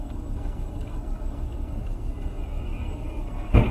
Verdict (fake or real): fake